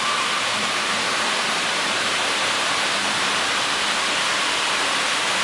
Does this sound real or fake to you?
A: fake